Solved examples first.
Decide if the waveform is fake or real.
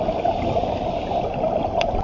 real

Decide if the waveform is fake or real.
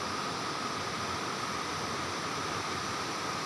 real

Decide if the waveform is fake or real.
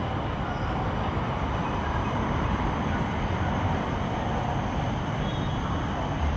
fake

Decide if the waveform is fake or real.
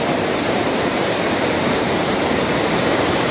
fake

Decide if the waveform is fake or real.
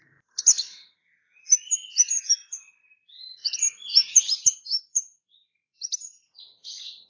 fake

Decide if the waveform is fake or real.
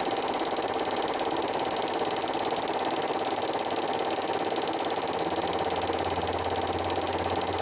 real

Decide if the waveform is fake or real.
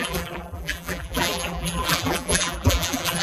fake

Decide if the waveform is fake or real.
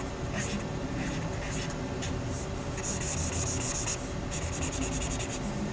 real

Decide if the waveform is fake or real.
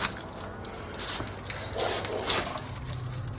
real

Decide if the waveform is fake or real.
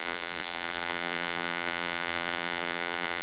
fake